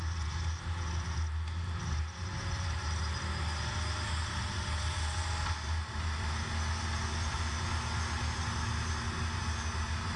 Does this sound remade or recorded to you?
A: recorded